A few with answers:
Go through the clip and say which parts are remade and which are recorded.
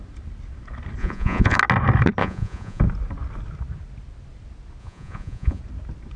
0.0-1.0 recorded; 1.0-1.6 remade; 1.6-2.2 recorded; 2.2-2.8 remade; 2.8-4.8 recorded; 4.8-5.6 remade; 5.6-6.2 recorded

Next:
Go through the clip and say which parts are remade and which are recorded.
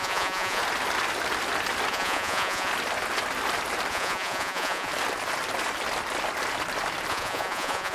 0.0-0.6 remade; 0.6-1.9 recorded; 1.9-2.7 remade; 2.7-3.9 recorded; 3.9-4.9 remade; 4.9-7.1 recorded; 7.1-7.9 remade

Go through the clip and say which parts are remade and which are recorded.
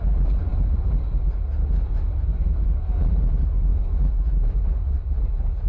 0.0-5.7 recorded